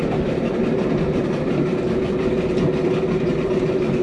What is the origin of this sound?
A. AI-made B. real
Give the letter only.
A